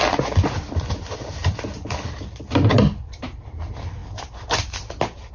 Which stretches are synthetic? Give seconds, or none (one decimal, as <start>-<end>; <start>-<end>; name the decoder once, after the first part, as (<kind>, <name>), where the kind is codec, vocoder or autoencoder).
none